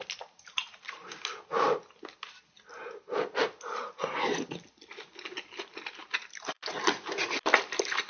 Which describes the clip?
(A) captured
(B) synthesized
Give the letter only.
A